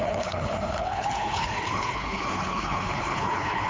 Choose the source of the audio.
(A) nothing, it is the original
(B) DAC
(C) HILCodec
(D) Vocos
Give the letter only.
C